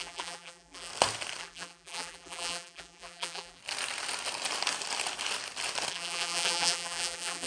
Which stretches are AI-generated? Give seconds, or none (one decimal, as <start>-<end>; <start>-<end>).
0.0-0.9; 1.4-3.6; 5.9-7.5